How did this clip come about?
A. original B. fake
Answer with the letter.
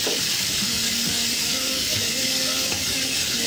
B